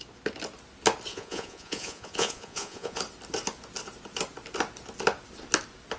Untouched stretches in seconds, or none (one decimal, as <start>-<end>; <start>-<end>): 0.0-1.1; 3.0-6.0

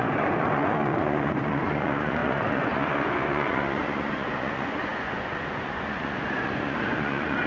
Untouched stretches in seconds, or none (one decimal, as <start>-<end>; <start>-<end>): none